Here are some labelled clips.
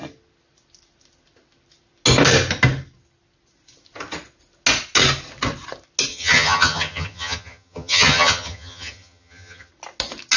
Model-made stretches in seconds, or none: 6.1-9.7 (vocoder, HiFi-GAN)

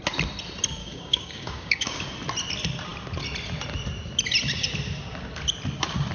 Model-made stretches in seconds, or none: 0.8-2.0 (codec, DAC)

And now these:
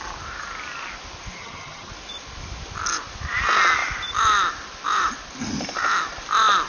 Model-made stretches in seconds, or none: 1.4-1.9 (vocoder, HiFi-GAN)

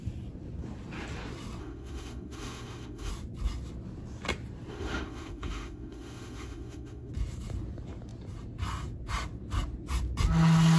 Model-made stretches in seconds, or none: 1.6-3.1 (autoencoder, DAC-VAE); 4.7-7.1

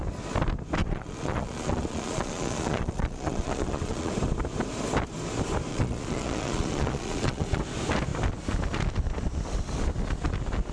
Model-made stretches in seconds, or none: 0.8-4.1 (vocoder, Vocos); 5.7-7.6